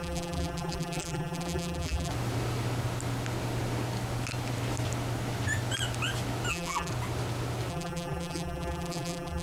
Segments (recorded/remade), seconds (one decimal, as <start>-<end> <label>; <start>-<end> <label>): 0.0-2.1 remade; 2.1-6.5 recorded; 6.5-6.9 remade; 6.9-7.7 recorded; 7.7-9.4 remade